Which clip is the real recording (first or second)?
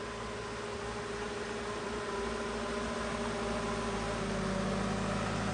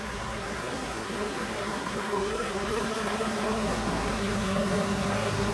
first